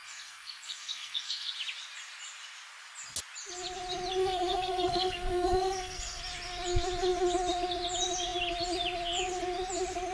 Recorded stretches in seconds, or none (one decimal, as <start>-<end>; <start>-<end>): 1.5-4.2; 6.2-10.1